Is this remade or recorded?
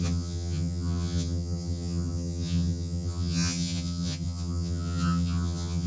remade